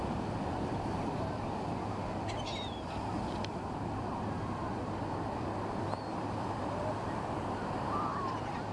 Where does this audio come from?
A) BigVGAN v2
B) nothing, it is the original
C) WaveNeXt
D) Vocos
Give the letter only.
A